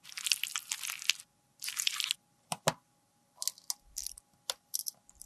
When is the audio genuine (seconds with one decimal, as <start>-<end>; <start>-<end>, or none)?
0.0-5.3